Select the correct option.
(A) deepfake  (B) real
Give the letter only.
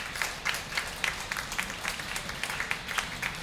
B